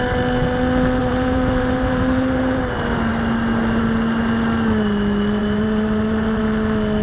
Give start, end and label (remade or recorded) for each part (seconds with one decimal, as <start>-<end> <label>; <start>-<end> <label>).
0.0-1.0 recorded; 1.0-2.6 remade; 2.6-5.4 recorded; 5.4-6.4 remade; 6.4-7.0 recorded